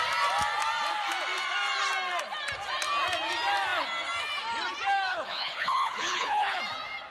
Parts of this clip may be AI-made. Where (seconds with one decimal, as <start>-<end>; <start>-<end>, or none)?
5.1-6.6